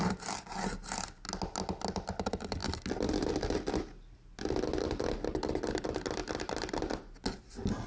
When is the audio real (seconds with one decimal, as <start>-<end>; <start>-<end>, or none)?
0.0-7.9

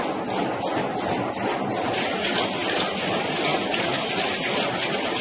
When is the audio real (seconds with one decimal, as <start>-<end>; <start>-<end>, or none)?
0.0-5.2

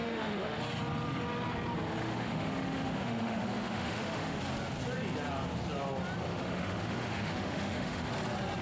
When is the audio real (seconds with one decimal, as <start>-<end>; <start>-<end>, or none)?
0.6-2.0; 4.4-6.3; 8.1-8.6

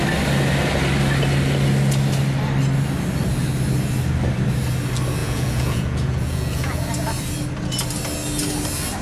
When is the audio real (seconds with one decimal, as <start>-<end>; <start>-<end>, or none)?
0.0-5.2; 6.8-9.0

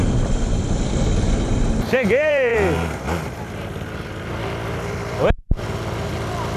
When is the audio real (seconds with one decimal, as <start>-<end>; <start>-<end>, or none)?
none

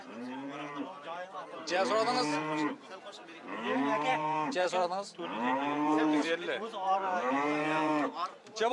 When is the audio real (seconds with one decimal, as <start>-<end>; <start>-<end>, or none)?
none

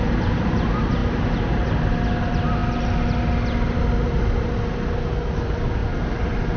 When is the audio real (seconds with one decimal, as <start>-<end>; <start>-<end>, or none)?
1.0-2.2; 2.6-5.3; 5.8-6.6

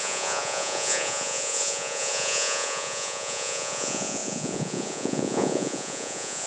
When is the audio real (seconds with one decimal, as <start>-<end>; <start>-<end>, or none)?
none